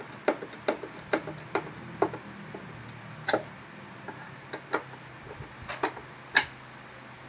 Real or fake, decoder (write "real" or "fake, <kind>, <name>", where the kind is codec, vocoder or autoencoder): real